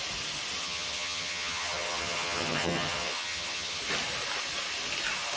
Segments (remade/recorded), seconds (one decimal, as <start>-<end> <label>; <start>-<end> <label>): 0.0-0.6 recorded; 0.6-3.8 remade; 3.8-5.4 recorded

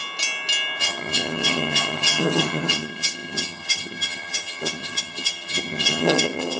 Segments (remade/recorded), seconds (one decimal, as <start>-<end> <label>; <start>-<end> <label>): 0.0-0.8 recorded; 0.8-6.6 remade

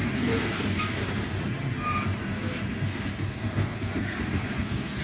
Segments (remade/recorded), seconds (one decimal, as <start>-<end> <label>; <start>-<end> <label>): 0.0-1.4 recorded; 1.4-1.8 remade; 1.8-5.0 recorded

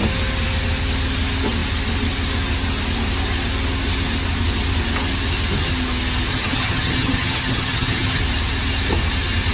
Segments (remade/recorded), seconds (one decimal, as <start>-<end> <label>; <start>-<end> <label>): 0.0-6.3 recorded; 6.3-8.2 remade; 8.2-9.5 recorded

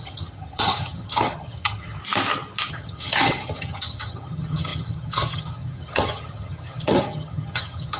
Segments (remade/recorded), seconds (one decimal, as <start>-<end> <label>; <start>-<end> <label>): 0.0-2.0 remade; 2.0-2.7 recorded; 2.7-8.0 remade